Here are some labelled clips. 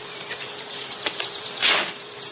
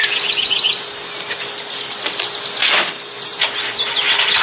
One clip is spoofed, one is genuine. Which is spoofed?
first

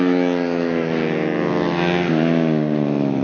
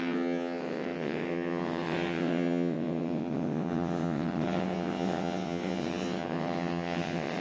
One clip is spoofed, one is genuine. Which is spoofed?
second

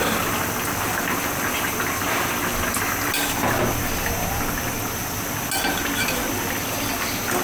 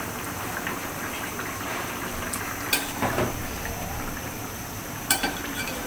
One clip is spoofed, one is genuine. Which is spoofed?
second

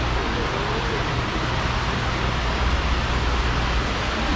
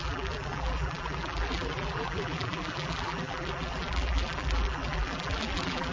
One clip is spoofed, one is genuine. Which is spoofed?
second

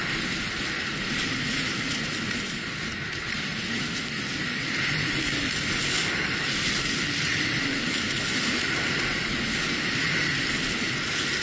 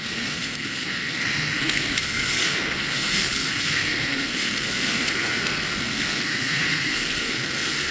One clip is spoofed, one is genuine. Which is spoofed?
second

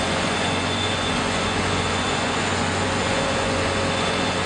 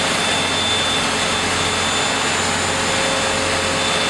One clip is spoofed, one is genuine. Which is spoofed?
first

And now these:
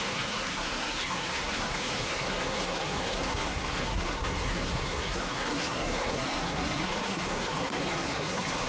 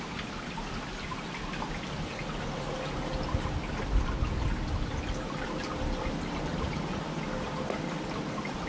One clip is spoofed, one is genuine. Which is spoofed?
first